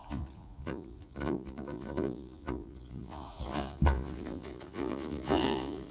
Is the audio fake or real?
fake